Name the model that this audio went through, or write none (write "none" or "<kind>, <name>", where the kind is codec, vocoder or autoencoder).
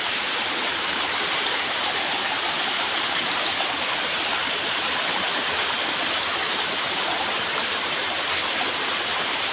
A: vocoder, BigVGAN v2